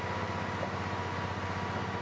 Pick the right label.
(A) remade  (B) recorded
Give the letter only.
B